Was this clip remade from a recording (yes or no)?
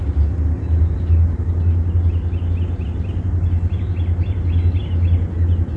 no